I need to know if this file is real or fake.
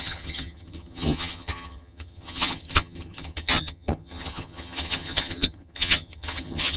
fake